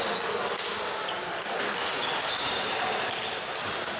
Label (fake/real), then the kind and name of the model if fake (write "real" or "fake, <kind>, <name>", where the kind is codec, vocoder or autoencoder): real